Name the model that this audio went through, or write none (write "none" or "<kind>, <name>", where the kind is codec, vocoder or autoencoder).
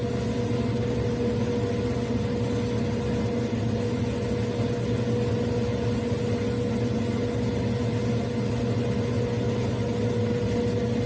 none